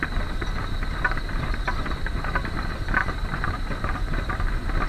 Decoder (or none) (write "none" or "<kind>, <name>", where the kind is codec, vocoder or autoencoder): none